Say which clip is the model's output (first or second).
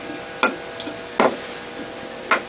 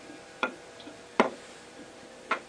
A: second